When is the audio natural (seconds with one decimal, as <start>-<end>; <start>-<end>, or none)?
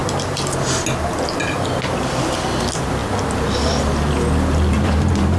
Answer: 0.0-5.4